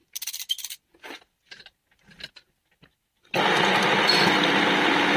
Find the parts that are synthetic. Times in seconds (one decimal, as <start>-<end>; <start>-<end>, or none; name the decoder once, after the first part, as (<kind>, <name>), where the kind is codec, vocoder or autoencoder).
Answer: none